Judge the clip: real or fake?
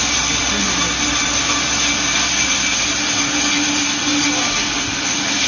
real